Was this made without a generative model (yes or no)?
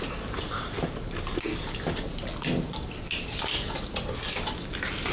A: yes